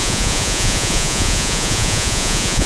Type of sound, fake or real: fake